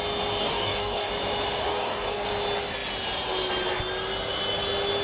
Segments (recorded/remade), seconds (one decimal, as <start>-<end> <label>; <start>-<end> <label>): 0.0-0.4 recorded; 0.4-1.1 remade; 1.1-1.6 recorded; 1.6-2.3 remade; 2.3-5.0 recorded